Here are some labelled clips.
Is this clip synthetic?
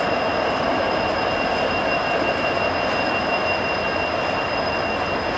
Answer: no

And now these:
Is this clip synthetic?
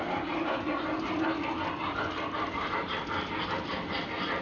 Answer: no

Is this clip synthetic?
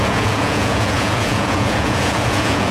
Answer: yes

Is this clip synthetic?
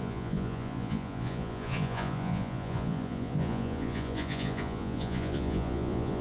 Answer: yes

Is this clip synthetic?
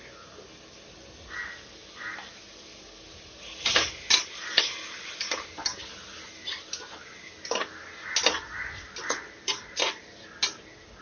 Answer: no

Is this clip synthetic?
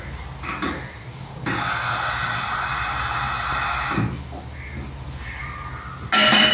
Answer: no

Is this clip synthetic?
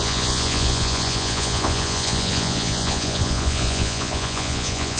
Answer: yes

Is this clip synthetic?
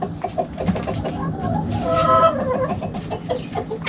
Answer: no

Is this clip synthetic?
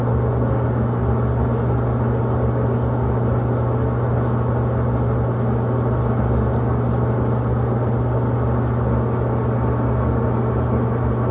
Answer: no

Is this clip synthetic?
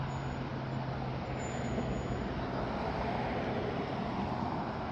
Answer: no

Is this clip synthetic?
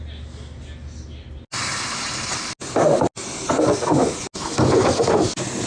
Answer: no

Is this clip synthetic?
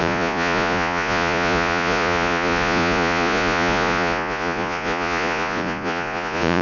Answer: yes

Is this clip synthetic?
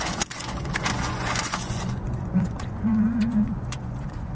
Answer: yes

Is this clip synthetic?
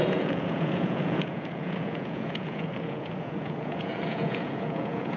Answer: yes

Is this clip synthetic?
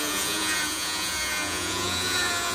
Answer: yes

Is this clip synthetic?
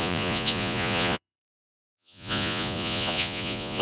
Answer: yes